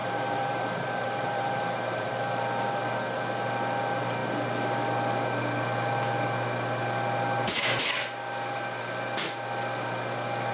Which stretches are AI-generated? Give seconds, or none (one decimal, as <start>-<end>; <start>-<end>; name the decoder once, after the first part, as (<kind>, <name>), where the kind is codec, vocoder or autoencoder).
0.0-2.1 (vocoder, BigVGAN v2)